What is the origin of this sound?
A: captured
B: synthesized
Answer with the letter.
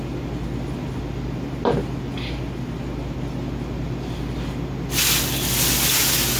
A